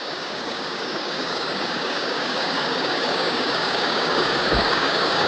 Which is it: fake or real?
fake